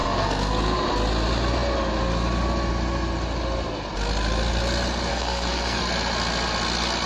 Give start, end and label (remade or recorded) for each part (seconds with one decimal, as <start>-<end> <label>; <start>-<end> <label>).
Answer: 0.0-0.5 remade; 0.5-5.1 recorded; 5.1-5.8 remade; 5.8-7.1 recorded